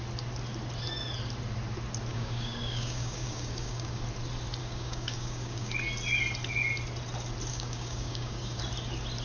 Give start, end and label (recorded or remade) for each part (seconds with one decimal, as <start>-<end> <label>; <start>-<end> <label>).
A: 0.0-2.1 recorded; 2.1-4.0 remade; 4.0-4.6 recorded; 4.6-5.7 remade; 5.7-7.5 recorded; 7.5-8.6 remade; 8.6-9.2 recorded

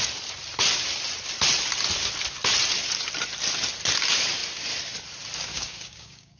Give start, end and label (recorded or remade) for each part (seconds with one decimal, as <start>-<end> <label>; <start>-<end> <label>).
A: 0.0-5.5 recorded; 5.5-6.4 remade

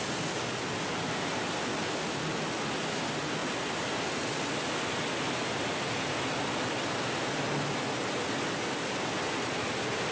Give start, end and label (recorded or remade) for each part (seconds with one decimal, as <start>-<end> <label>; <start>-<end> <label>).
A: 0.0-10.1 recorded

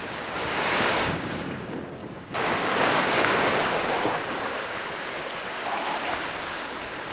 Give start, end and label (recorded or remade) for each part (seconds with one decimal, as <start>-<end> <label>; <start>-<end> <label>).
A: 0.0-5.3 remade; 5.3-6.3 recorded; 6.3-7.1 remade

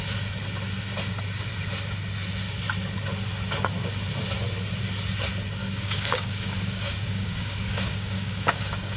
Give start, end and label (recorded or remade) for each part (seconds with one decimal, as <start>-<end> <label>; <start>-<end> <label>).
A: 0.0-5.6 recorded; 5.6-9.0 remade

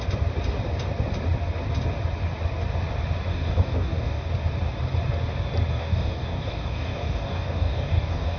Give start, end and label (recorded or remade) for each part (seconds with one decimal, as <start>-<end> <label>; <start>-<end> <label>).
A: 0.0-3.3 recorded; 3.3-4.3 remade; 4.3-5.7 recorded; 5.7-8.4 remade